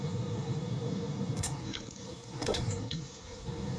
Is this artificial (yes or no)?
yes